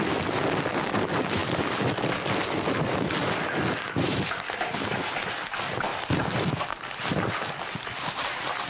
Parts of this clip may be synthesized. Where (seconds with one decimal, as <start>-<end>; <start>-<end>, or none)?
none